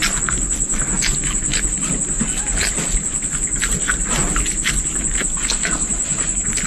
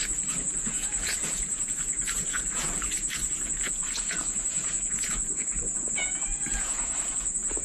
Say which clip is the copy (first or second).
second